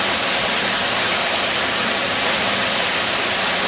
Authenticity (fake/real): real